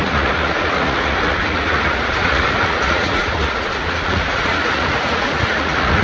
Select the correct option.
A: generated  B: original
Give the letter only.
A